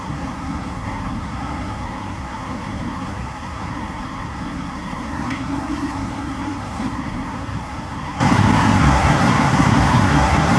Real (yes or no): no